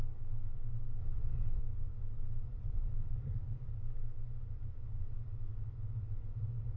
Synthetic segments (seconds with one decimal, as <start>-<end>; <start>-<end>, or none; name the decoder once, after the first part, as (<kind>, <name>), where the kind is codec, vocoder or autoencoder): 1.0-1.6 (vocoder, Vocos); 2.6-3.7

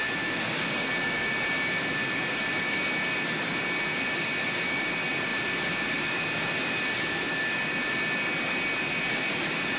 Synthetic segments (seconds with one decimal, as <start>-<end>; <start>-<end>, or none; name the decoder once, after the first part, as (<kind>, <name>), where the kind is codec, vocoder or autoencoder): none

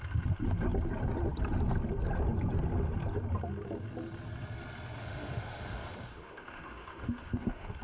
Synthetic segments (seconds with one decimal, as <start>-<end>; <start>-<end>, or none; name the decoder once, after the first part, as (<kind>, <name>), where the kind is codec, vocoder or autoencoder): 5.0-7.8 (autoencoder, DAC-VAE)

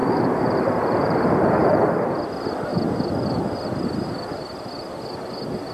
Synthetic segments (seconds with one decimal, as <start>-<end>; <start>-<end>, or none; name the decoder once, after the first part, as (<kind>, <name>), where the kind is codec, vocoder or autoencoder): 0.0-1.9 (vocoder, BigVGAN v2)